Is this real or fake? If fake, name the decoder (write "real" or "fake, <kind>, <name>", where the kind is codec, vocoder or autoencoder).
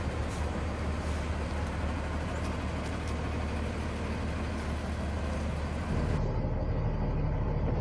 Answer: real